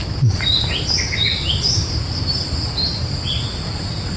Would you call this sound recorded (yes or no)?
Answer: yes